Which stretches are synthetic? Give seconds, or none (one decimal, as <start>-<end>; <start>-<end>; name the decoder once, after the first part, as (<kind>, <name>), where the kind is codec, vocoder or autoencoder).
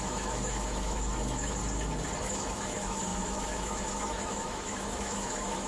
0.0-1.6 (autoencoder, DAC-VAE); 2.2-5.7